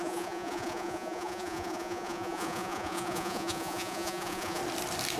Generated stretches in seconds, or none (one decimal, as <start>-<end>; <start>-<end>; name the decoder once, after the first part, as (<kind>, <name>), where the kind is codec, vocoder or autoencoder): 0.0-4.6 (vocoder, Vocos)